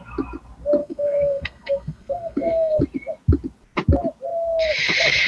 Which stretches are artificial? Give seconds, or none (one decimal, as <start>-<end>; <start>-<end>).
0.8-2.8